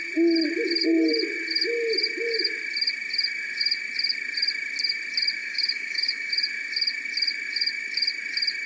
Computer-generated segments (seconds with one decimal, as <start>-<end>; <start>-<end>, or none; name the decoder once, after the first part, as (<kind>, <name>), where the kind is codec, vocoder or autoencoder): 5.4-6.3 (autoencoder, DAC-VAE)